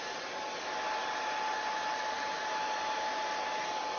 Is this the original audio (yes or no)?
yes